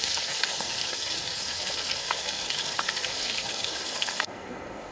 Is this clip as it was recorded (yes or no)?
no